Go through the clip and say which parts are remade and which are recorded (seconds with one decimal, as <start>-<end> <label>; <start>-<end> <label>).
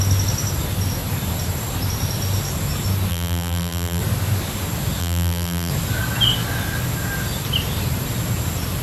0.0-3.1 recorded; 3.1-4.0 remade; 4.0-5.0 recorded; 5.0-5.7 remade; 5.7-8.8 recorded